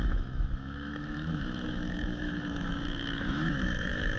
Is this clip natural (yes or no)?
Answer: no